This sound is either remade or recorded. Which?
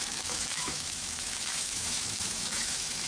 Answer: remade